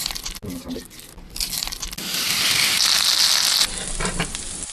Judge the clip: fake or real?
real